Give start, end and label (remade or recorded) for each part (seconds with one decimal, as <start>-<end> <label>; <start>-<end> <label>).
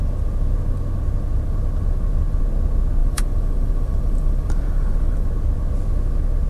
0.0-3.0 recorded; 3.0-5.3 remade; 5.3-6.5 recorded